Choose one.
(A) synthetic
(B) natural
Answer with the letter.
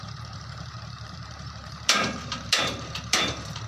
A